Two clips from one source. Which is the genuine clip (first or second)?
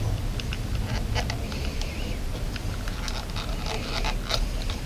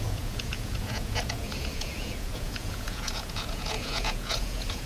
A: first